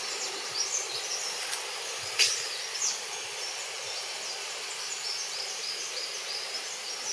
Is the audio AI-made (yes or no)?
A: no